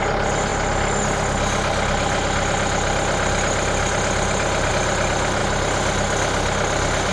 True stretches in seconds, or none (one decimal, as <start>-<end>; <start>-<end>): 0.0-7.1